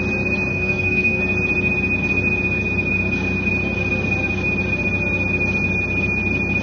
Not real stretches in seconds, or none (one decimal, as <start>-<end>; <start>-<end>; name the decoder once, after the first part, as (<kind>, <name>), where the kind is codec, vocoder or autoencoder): 0.5-1.2 (codec, SNAC)